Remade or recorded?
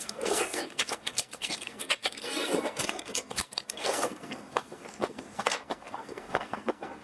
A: remade